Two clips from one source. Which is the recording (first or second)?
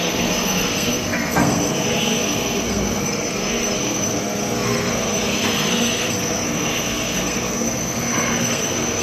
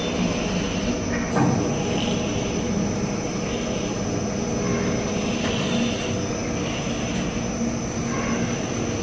second